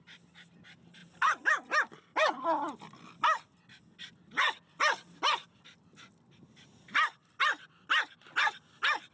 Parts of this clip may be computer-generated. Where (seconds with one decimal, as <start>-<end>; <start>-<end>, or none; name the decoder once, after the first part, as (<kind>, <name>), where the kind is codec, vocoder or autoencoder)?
none